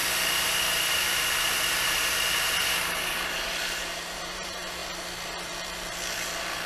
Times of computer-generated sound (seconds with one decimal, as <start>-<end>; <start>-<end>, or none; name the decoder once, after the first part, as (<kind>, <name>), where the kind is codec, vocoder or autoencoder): 0.9-4.8 (vocoder, BigVGAN v2)